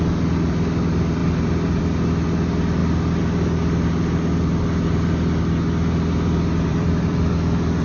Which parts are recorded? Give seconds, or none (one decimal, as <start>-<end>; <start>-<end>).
0.0-1.2; 1.8-6.7; 7.3-7.8